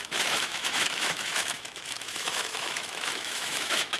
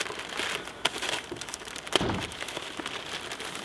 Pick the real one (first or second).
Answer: second